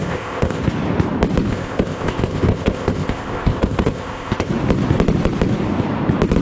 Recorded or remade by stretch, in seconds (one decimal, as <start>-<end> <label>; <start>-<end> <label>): 0.0-0.6 remade; 0.6-1.5 recorded; 1.5-4.5 remade; 4.5-6.4 recorded